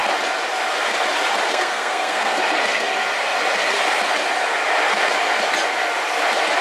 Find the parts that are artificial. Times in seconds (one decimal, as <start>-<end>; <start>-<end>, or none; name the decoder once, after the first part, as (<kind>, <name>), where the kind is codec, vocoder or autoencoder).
1.5-2.4 (codec, SNAC)